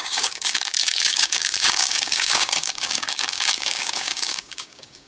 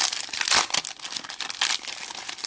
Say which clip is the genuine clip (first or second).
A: second